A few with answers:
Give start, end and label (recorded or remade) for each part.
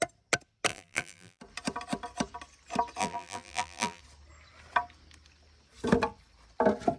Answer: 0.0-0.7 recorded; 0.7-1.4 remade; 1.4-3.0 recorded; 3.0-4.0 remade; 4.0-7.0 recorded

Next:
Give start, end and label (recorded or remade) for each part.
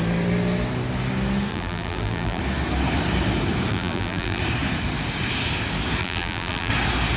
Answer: 0.0-1.5 recorded; 1.5-2.4 remade; 2.4-3.7 recorded; 3.7-4.4 remade; 4.4-6.0 recorded; 6.0-6.7 remade; 6.7-7.2 recorded